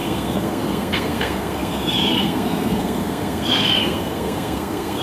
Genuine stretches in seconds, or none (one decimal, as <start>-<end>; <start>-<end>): none